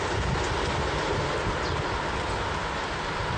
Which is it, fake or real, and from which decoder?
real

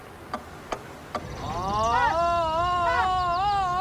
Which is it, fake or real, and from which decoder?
real